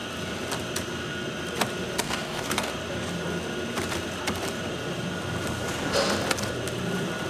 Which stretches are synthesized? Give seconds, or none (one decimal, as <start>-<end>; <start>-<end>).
2.0-2.7